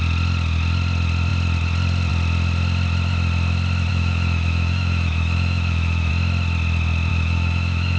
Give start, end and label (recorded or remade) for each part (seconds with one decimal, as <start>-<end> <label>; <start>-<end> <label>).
0.0-3.9 recorded; 3.9-6.1 remade; 6.1-7.1 recorded; 7.1-8.0 remade